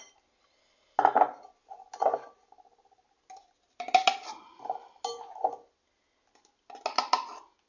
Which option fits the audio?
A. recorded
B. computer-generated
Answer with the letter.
A